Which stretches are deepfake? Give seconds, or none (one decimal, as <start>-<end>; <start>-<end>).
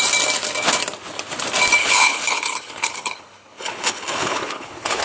1.8-5.0